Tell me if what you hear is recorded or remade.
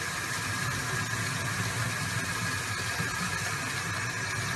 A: recorded